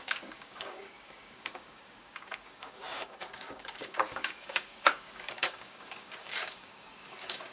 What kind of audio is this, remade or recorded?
remade